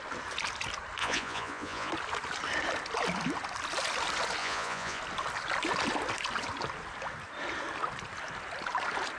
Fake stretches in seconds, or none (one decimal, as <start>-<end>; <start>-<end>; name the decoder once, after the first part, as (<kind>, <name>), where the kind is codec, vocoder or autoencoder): 1.0-1.9 (vocoder, Vocos); 4.4-5.0